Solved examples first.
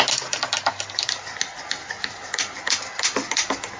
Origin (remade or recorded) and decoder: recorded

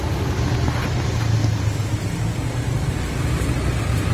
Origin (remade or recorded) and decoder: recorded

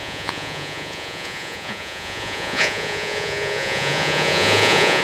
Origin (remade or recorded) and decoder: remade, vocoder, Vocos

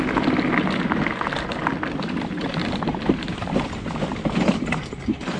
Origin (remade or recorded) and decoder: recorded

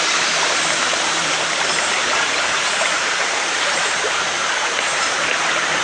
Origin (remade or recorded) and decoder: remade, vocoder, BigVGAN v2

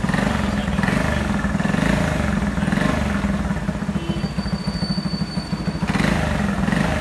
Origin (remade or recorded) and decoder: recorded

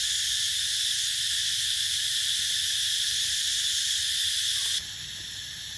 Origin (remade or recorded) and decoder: recorded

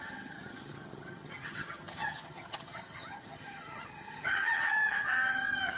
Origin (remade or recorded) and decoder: remade, vocoder, HiFi-GAN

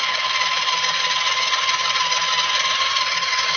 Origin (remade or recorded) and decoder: recorded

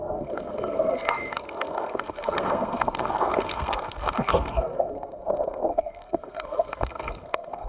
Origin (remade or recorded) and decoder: remade, codec, SNAC